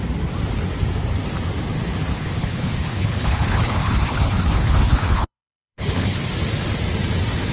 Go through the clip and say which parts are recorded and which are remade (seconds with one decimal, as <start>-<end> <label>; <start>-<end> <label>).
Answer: 0.0-2.1 recorded; 2.1-6.2 remade; 6.2-7.5 recorded